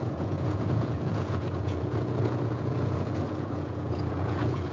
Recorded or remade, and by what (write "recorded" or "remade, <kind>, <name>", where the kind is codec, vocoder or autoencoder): remade, vocoder, Vocos